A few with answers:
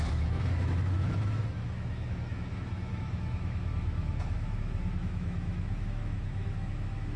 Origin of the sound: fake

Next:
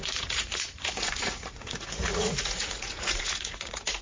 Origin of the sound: fake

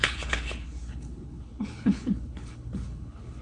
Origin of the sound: fake